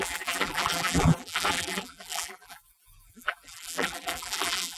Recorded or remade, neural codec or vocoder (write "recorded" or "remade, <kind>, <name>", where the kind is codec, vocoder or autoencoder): remade, vocoder, BigVGAN v2